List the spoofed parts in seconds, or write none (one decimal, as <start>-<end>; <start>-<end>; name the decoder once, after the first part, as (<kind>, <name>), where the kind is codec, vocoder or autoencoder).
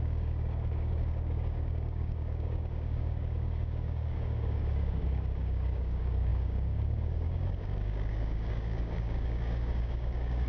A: 0.0-10.5 (codec, DAC)